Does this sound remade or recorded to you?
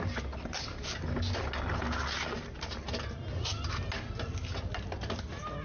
recorded